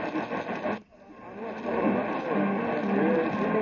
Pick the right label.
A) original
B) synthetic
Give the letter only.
A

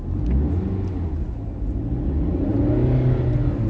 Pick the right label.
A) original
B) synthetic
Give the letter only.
A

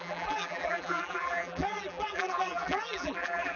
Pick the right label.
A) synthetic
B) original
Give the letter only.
A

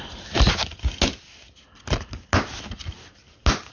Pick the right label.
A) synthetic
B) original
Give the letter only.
B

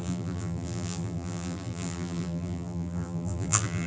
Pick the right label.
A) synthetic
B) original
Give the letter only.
A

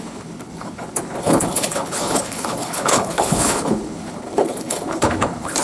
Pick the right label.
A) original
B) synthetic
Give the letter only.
B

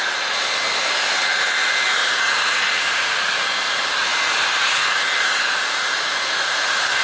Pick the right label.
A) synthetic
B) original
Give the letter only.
B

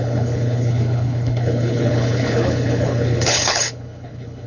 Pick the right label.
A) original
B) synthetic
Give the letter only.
B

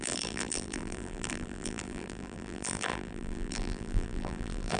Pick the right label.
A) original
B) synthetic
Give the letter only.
B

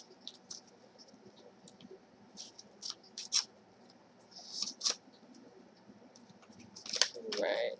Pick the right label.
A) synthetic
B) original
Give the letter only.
B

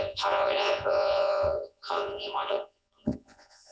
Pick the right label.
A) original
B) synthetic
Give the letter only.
B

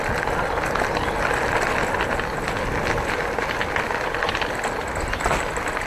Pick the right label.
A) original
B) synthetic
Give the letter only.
A